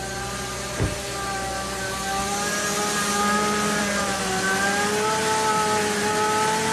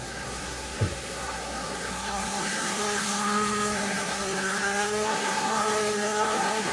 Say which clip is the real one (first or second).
first